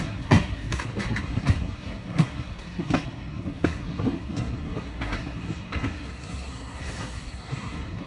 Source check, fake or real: fake